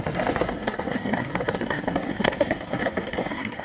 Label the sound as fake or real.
fake